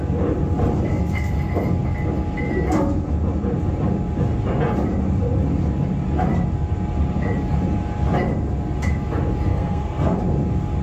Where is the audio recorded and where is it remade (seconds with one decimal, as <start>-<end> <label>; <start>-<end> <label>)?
0.0-9.5 recorded; 9.5-10.2 remade; 10.2-10.8 recorded